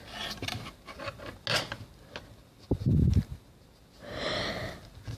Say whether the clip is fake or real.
real